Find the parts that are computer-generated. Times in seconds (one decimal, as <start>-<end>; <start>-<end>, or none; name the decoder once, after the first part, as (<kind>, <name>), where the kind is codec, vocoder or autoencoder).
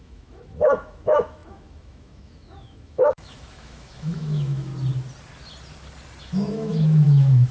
0.0-4.7 (autoencoder, DAC-VAE); 6.2-7.5